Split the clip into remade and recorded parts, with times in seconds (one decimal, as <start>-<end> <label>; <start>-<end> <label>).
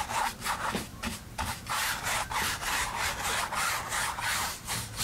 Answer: 0.0-0.9 recorded; 0.9-3.1 remade; 3.1-4.3 recorded; 4.3-5.0 remade